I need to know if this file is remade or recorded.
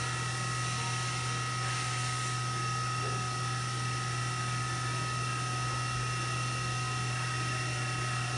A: recorded